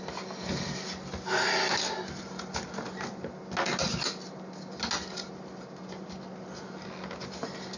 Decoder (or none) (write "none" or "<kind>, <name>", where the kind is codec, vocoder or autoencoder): none